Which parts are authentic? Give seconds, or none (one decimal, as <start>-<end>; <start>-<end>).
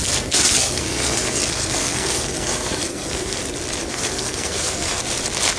3.4-3.8; 5.0-5.6